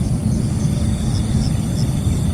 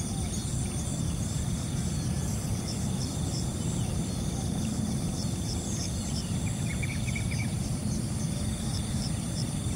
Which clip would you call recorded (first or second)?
first